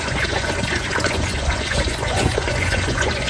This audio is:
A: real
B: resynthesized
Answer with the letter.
B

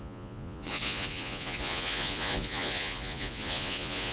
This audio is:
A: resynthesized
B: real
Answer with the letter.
A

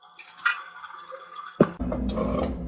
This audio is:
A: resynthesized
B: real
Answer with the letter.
B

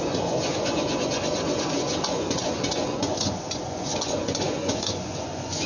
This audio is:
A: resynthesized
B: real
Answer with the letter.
A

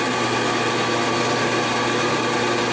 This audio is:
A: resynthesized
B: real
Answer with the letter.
B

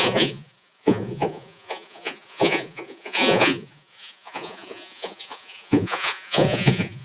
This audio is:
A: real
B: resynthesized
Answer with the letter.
B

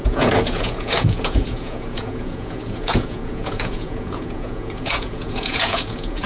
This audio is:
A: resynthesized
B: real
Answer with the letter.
A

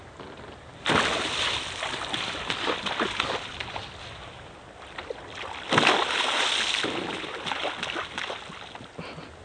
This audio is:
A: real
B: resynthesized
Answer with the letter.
A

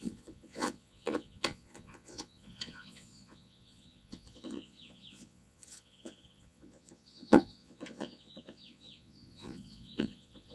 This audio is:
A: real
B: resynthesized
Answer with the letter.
B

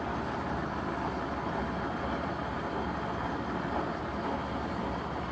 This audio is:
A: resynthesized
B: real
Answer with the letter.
B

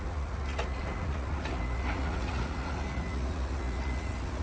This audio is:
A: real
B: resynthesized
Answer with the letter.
B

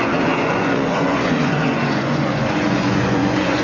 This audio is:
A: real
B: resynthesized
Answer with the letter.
B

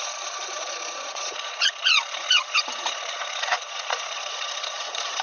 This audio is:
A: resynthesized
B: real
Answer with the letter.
A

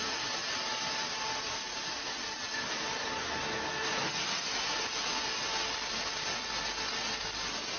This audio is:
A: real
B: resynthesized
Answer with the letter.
A